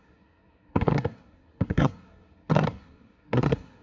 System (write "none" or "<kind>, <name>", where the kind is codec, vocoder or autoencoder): codec, SNAC